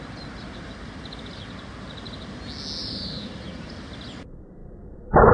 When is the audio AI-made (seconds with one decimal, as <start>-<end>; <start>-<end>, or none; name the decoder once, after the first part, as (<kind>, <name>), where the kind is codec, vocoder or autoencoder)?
2.8-3.8 (vocoder, BigVGAN v2); 4.6-5.3